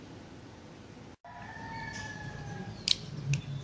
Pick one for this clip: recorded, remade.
recorded